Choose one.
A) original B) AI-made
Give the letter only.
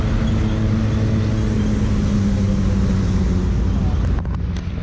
A